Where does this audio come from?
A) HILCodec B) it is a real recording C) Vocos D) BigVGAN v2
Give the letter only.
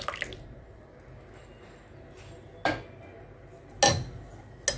B